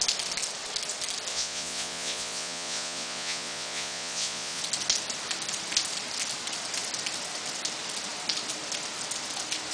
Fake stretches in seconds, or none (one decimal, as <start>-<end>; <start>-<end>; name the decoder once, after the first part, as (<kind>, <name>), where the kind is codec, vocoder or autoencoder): 1.3-4.6 (vocoder, Vocos)